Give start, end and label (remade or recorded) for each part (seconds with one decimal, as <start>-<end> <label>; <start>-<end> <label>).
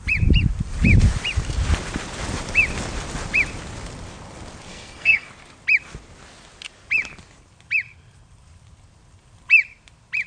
0.0-4.7 recorded; 4.7-5.3 remade; 5.3-10.3 recorded